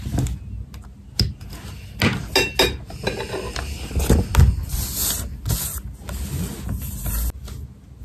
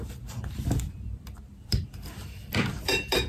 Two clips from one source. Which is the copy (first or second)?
second